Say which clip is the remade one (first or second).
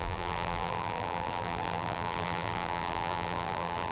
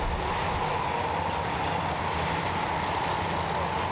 first